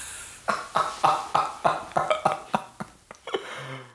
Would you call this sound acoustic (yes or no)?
yes